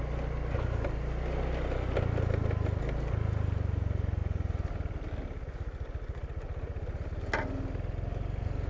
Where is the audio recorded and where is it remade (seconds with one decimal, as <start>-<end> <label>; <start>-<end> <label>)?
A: 0.0-8.7 recorded